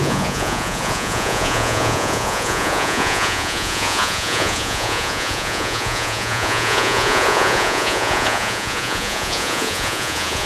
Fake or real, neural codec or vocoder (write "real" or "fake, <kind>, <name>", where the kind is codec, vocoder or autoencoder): fake, vocoder, Vocos